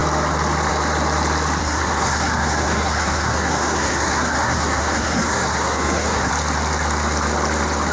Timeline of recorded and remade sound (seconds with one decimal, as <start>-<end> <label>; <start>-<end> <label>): 0.0-1.6 recorded; 1.6-6.3 remade; 6.3-7.9 recorded